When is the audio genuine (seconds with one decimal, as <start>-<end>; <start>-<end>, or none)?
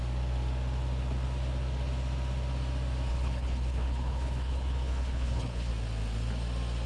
0.0-3.1; 5.7-6.9